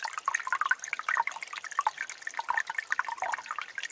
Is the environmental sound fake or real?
real